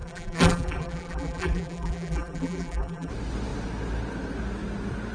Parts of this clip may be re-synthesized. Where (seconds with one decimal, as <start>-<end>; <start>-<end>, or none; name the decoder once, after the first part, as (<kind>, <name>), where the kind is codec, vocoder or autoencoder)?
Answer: 0.0-3.1 (vocoder, BigVGAN v2)